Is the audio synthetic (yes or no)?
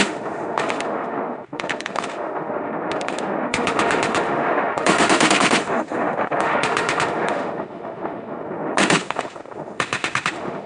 yes